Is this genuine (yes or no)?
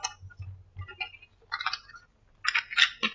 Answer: yes